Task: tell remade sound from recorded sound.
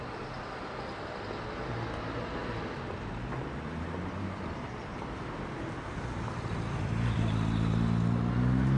recorded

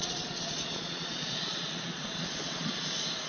remade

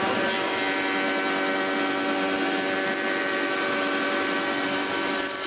recorded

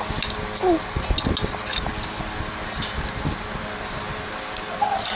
recorded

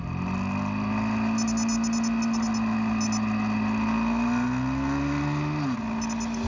recorded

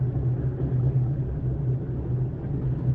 recorded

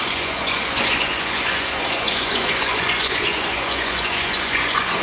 remade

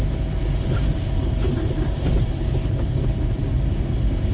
recorded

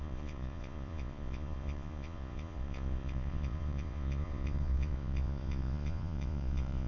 remade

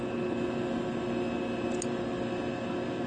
recorded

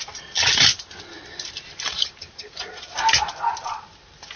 recorded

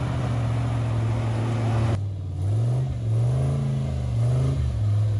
recorded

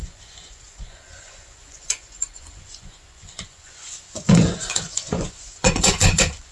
remade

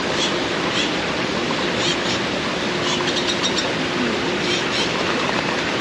recorded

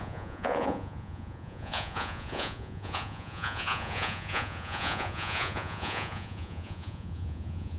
remade